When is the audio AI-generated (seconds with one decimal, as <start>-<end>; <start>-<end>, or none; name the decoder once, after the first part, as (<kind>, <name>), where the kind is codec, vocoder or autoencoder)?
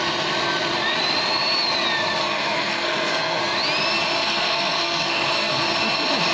2.2-3.4 (codec, SNAC); 4.2-5.6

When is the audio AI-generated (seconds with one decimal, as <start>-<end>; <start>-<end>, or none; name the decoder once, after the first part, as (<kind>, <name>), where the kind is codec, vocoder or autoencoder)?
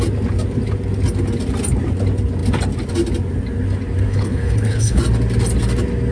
4.1-5.0 (codec, HILCodec)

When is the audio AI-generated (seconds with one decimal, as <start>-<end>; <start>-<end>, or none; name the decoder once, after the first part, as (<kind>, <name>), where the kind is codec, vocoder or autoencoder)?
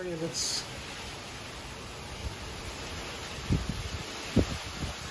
none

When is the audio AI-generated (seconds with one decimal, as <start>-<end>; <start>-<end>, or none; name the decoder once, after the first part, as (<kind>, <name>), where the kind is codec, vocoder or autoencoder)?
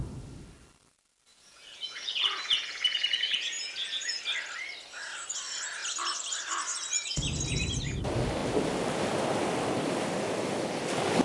1.3-4.2 (vocoder, Vocos)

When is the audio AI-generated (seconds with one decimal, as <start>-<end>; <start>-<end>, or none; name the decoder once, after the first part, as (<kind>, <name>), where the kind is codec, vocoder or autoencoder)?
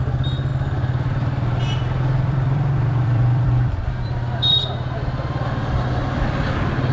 0.5-4.6 (vocoder, BigVGAN v2)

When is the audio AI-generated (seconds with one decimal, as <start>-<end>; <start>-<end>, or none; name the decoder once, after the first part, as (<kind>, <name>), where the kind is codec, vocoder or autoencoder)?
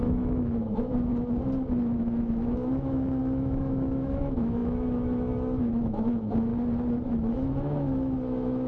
0.0-1.1 (autoencoder, DAC-VAE); 2.0-6.5; 7.1-8.7